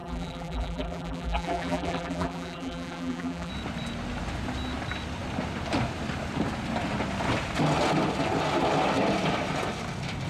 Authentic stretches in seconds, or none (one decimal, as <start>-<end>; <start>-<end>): 3.5-10.3